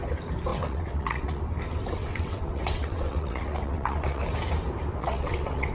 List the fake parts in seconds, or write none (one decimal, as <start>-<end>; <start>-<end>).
0.5-1.4; 2.0-4.2; 5.0-5.7